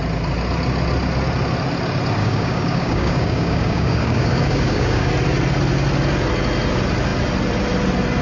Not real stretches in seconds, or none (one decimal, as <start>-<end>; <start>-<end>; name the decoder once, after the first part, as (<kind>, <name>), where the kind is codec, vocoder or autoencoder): 2.2-5.1 (codec, DAC)